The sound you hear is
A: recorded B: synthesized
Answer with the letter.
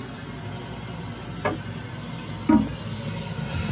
A